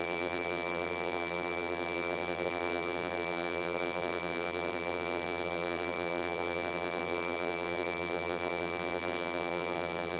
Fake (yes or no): yes